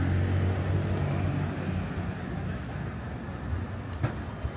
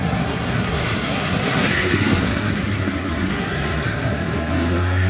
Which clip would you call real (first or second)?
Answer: first